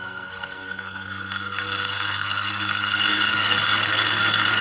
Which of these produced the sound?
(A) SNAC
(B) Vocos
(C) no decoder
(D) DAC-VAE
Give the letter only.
A